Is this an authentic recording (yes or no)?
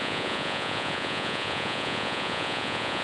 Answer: no